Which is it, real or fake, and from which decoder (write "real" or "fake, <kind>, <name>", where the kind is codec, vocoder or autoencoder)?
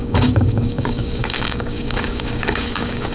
fake, codec, DAC